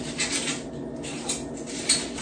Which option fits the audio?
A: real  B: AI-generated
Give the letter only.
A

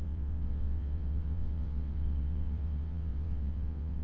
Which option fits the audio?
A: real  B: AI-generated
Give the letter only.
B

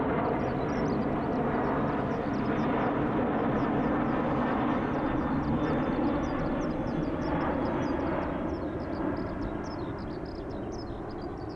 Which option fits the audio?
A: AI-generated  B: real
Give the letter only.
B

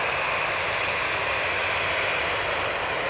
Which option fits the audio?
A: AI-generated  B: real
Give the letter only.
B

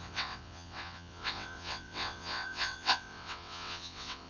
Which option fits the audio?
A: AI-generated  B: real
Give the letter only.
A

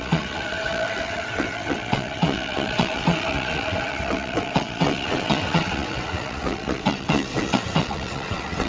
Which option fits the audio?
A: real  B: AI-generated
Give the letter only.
B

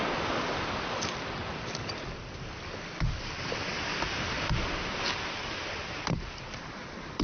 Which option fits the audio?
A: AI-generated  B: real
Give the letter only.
B